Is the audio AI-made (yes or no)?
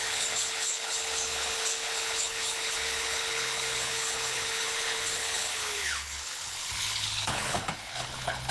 yes